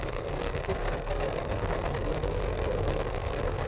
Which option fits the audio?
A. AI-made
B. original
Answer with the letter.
A